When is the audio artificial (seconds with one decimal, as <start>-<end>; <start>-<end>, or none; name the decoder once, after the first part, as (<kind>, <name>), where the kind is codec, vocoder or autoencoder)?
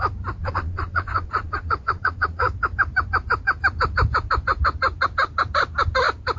0.4-2.5 (vocoder, Vocos)